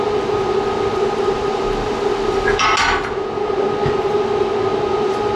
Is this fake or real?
real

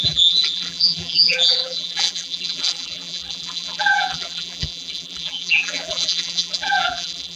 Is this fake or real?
fake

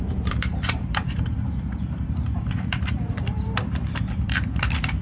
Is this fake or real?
fake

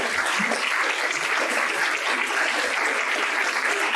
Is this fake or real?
real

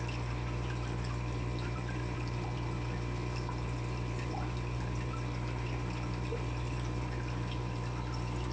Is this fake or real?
fake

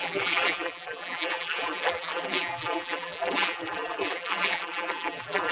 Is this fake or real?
fake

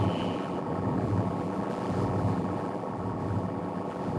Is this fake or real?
fake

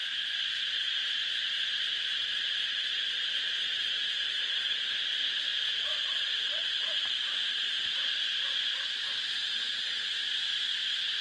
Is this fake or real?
fake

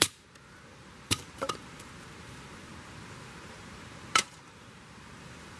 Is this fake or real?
fake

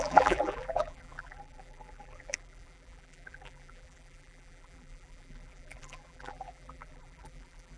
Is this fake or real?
fake